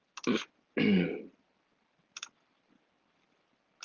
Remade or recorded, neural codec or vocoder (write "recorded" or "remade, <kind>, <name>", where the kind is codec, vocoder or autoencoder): recorded